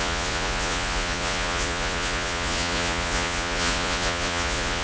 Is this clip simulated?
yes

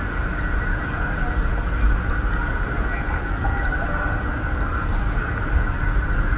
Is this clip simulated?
no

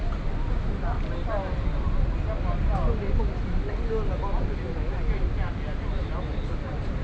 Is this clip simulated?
no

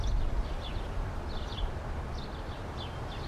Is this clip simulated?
no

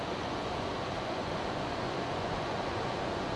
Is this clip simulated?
yes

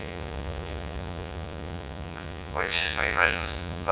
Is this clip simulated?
yes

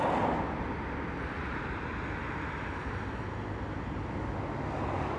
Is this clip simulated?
no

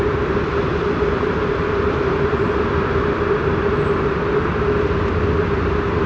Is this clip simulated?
no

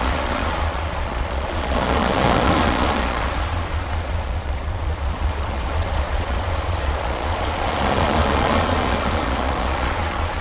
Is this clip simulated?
yes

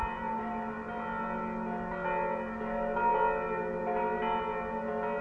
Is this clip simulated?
no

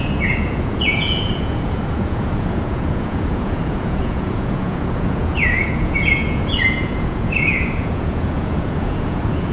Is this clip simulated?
yes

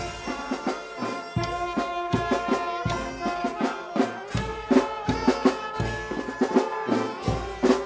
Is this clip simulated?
no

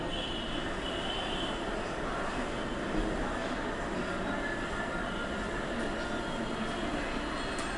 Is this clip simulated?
no